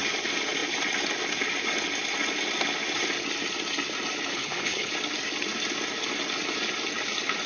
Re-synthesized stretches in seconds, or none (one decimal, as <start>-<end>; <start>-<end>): 4.3-4.9